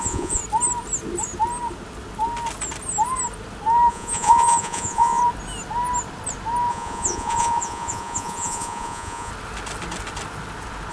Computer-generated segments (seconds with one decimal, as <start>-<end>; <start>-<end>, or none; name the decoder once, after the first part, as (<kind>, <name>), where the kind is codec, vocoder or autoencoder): 0.0-0.4 (vocoder, Vocos); 3.9-5.2; 6.7-9.3